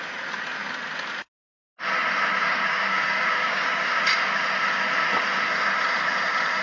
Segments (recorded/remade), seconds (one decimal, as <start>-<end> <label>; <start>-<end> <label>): 0.0-2.4 recorded; 2.4-4.0 remade; 4.0-6.6 recorded